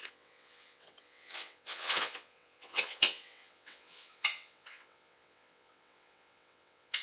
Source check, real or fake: fake